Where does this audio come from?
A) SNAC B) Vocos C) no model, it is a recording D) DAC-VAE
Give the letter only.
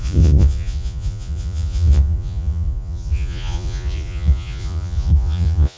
B